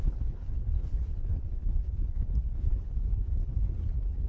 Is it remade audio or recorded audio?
remade